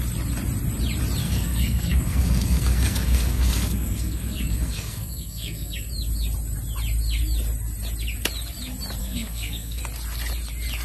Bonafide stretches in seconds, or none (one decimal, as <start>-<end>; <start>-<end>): 0.0-1.2; 5.9-9.0; 9.8-10.8